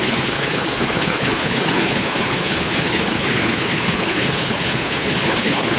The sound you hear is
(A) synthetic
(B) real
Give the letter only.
A